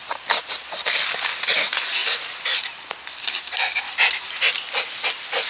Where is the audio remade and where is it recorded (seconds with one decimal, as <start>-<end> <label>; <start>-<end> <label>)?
0.0-5.5 recorded